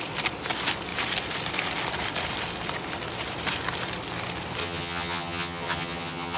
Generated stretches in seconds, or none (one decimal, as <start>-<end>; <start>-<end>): 4.6-6.4